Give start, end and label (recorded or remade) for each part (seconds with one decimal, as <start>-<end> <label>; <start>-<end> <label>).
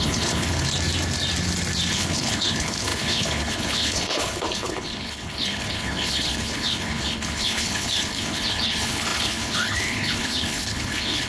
0.0-0.7 remade; 0.7-1.9 recorded; 1.9-11.3 remade